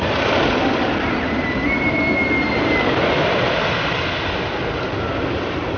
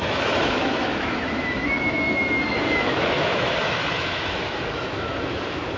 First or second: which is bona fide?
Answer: first